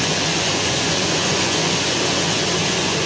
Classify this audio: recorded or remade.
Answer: remade